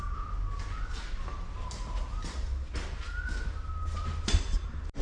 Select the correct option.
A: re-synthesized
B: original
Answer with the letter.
B